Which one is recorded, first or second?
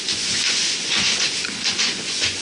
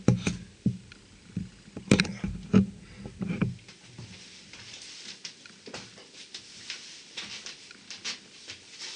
second